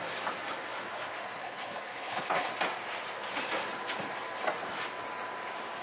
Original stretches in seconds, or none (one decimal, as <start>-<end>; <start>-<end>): 0.0-1.4; 2.5-5.8